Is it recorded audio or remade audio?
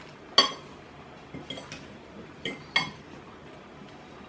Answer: recorded